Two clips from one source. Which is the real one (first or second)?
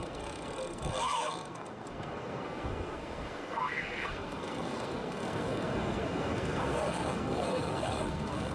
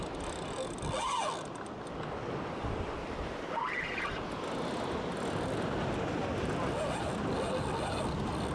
second